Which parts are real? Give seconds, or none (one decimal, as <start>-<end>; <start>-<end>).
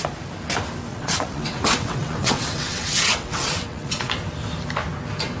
0.0-0.9; 4.1-5.4